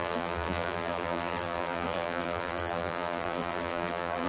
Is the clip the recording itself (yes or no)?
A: no